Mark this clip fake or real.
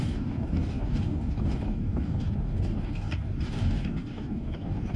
fake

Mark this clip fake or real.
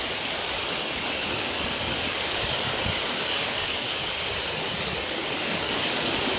fake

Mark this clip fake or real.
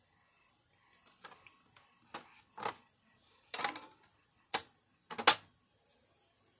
real